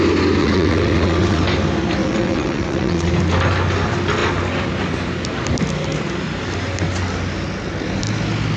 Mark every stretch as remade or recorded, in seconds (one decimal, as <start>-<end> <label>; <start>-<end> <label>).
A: 0.0-0.4 recorded; 0.4-1.4 remade; 1.4-2.0 recorded; 2.0-3.1 remade; 3.1-8.6 recorded